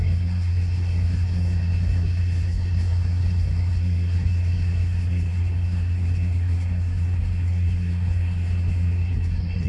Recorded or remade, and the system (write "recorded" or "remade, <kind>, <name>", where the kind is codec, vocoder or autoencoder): remade, codec, SNAC